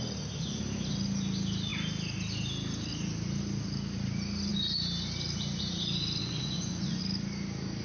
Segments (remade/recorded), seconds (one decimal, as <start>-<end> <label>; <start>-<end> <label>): 0.0-6.2 recorded; 6.2-7.0 remade; 7.0-7.8 recorded